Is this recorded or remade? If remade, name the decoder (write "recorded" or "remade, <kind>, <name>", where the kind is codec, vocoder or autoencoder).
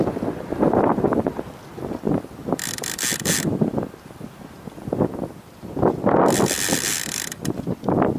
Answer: recorded